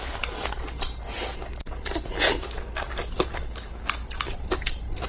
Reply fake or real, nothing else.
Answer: real